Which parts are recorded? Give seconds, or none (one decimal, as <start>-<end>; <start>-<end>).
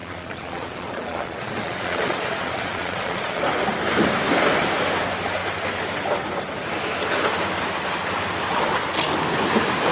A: 3.4-9.9